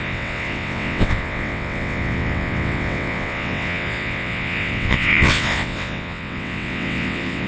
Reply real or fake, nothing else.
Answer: fake